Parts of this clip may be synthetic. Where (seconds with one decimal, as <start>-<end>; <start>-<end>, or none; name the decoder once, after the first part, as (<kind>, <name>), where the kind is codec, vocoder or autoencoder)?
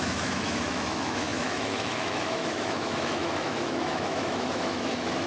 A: 0.0-5.3 (autoencoder, DAC-VAE)